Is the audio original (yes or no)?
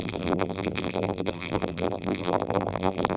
no